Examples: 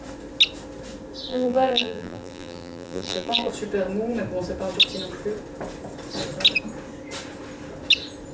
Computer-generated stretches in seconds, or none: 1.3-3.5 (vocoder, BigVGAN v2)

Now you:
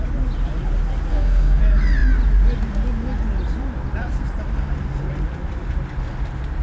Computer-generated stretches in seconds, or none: 1.1-1.6 (codec, DAC)

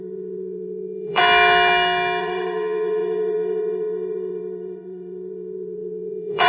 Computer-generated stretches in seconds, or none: 0.0-1.2 (vocoder, WaveNeXt); 2.2-6.5

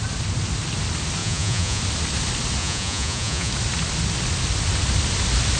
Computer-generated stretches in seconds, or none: 1.2-1.8 (vocoder, Vocos); 2.6-3.5

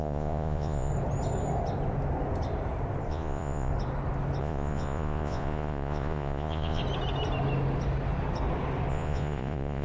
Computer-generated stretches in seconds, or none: 0.0-0.9 (vocoder, Vocos); 3.1-3.7; 4.4-6.8; 8.9-9.8

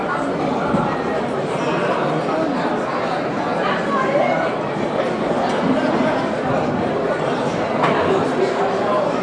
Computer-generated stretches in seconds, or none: none

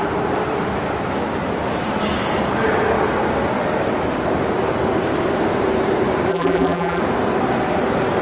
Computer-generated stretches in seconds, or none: 6.3-7.0 (vocoder, BigVGAN v2)